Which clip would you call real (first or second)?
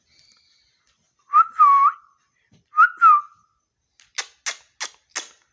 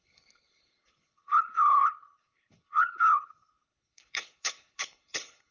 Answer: first